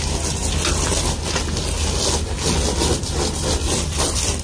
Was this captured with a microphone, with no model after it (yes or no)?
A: yes